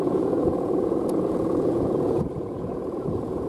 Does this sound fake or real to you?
fake